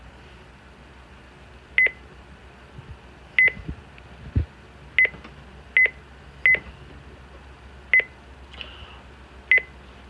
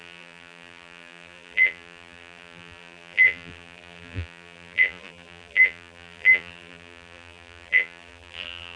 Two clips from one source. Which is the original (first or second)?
first